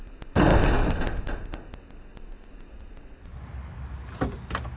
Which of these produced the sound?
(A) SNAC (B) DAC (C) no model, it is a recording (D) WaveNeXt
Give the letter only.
C